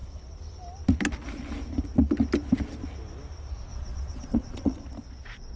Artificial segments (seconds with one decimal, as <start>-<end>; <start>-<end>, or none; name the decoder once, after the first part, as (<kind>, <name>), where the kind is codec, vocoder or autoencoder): 3.7-4.8 (vocoder, Vocos)